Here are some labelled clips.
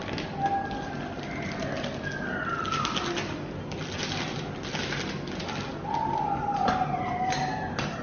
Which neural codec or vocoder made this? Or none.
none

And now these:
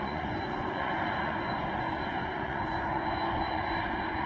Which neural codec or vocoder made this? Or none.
vocoder, Vocos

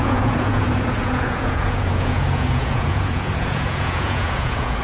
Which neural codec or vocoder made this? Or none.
vocoder, Vocos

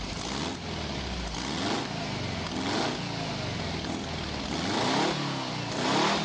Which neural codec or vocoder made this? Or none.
none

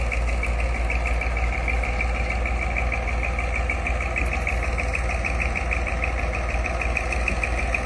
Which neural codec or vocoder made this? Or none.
none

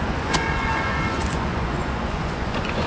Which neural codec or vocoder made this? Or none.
vocoder, Vocos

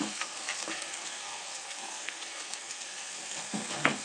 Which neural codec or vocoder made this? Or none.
codec, SNAC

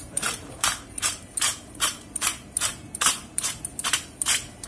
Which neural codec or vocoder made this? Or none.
vocoder, BigVGAN v2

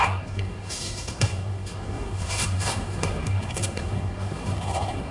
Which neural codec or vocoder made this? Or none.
codec, SNAC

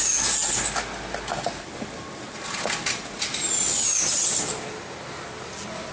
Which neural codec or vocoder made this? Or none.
none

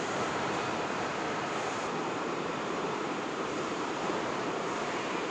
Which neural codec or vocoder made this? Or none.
vocoder, BigVGAN v2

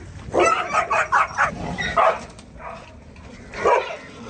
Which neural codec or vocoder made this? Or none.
none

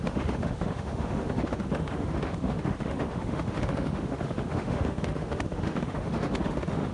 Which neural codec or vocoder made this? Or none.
autoencoder, DAC-VAE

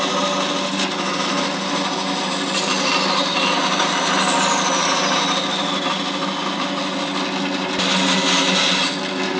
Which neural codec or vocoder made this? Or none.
none